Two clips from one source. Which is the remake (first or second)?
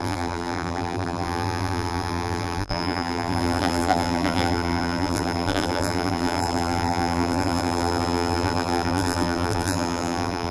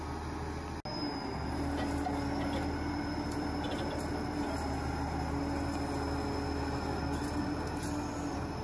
first